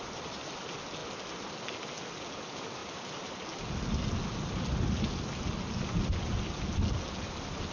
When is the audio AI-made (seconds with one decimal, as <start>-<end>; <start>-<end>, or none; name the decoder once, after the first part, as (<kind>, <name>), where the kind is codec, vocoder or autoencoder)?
none